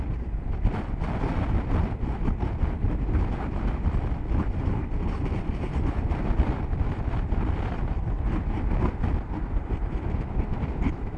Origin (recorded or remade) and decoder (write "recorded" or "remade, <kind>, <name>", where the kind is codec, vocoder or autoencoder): recorded